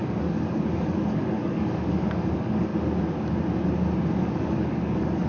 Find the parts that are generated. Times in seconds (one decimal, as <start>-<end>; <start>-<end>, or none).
0.0-2.7; 4.1-5.3

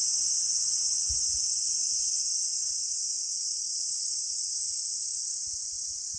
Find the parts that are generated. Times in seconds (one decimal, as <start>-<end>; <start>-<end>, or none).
1.0-4.7

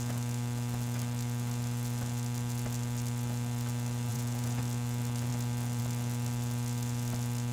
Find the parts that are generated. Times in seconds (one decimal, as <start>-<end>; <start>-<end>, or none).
4.1-4.6

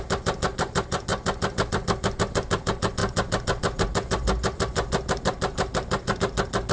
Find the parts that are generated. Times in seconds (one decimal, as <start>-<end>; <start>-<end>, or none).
0.0-1.1; 1.7-6.7

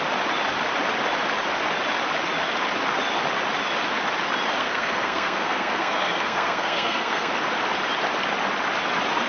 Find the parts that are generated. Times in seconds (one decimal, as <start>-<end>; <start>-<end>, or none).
4.6-7.3

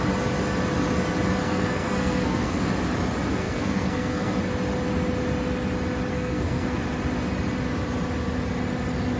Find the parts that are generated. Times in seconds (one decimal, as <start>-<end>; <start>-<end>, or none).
1.4-2.6; 3.3-4.4; 6.1-6.8

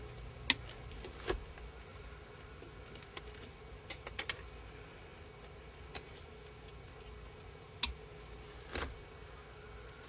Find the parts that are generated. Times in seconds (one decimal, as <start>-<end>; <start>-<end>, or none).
none